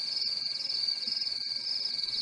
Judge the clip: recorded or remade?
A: recorded